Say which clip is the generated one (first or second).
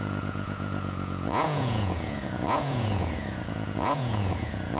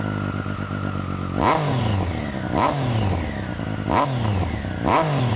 first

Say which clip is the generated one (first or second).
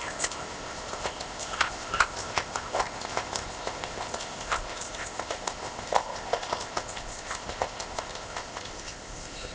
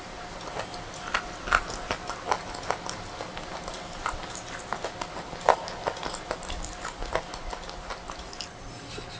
first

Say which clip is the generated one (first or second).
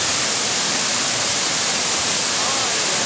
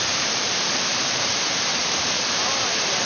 second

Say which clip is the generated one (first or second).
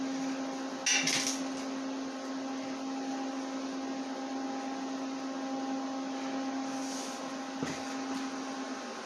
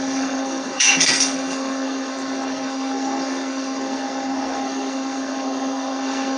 second